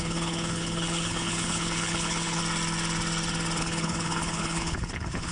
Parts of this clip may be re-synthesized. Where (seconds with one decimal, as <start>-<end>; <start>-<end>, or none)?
0.0-2.4; 3.6-5.3